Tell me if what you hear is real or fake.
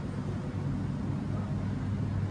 real